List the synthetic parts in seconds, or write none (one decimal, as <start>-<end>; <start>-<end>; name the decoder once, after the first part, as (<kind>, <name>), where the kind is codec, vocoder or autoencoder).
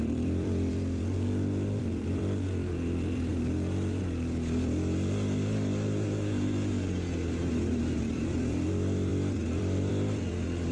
0.0-3.3 (vocoder, BigVGAN v2); 8.0-10.7